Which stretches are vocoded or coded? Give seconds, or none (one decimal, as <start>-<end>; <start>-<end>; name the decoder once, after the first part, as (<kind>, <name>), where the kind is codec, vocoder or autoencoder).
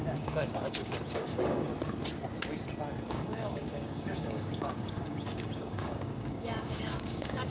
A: 0.0-1.7 (codec, DAC); 3.1-7.5